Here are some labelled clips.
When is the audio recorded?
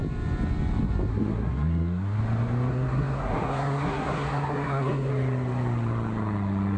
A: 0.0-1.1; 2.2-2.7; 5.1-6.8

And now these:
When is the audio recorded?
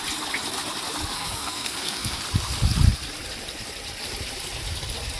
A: 0.0-1.1; 2.2-5.2